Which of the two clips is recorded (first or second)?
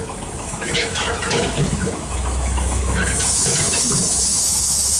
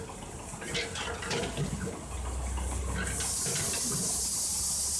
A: second